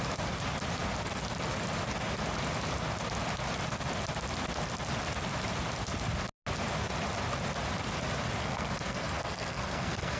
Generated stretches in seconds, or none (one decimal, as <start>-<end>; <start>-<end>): 8.4-10.2